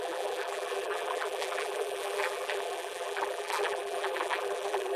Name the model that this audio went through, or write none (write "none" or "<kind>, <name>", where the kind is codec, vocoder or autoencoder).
vocoder, BigVGAN v2